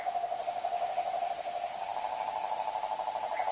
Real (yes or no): yes